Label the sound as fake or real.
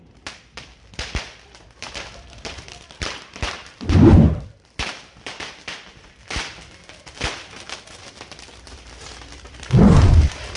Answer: fake